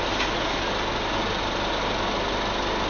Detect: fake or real real